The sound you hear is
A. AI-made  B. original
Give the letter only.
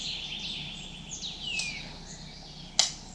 B